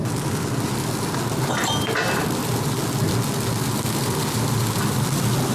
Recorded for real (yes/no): yes